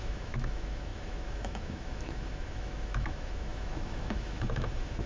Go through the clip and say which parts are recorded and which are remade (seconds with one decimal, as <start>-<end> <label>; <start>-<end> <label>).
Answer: 0.0-5.1 remade